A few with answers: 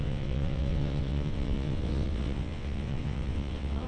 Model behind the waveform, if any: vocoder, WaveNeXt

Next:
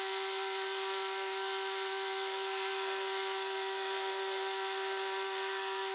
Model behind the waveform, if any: codec, SNAC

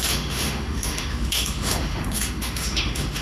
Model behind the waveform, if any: autoencoder, DAC-VAE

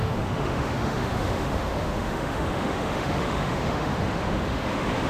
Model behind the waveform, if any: autoencoder, DAC-VAE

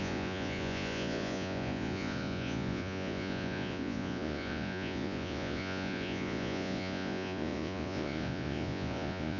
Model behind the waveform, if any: vocoder, Vocos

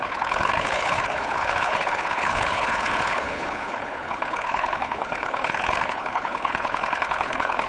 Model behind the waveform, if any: codec, HILCodec